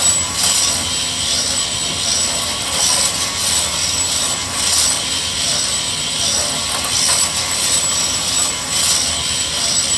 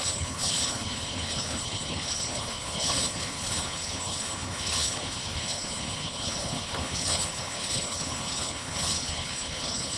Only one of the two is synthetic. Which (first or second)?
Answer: second